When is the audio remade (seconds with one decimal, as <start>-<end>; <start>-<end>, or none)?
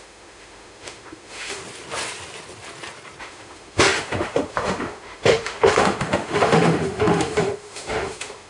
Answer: 0.0-1.6; 3.2-8.5